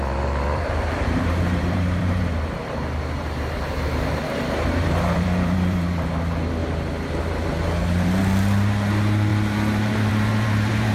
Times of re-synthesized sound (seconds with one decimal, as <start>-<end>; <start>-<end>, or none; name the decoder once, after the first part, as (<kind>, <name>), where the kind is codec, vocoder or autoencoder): 0.0-10.9 (vocoder, BigVGAN v2)